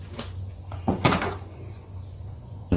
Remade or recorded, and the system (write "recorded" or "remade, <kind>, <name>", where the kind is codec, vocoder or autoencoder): remade, vocoder, Vocos